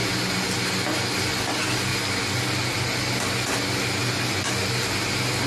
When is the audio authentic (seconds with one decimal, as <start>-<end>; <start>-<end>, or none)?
0.0-5.5